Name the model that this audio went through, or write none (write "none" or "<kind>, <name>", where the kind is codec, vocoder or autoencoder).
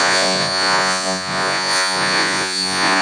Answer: vocoder, Vocos